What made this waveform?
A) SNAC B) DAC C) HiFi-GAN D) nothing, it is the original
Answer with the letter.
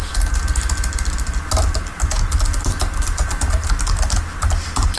D